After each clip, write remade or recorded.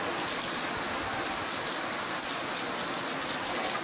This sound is recorded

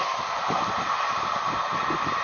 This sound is recorded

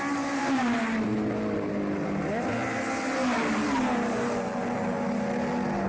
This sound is recorded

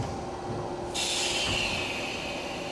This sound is recorded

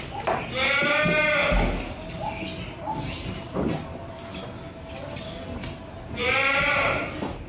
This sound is recorded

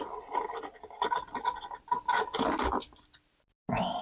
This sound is recorded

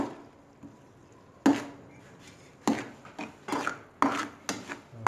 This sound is recorded